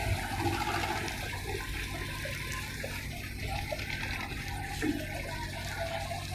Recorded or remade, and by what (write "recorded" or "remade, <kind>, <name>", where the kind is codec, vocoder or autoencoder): recorded